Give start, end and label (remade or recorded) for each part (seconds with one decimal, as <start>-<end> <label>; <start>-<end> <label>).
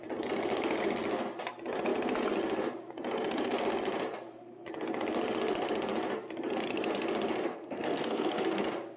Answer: 0.0-7.5 recorded; 7.5-8.6 remade; 8.6-9.0 recorded